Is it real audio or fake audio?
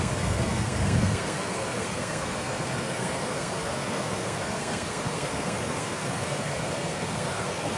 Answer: fake